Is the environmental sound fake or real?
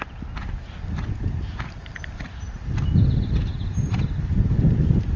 real